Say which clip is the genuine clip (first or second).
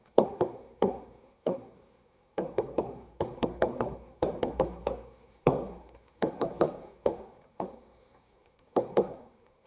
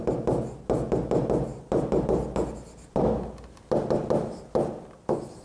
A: second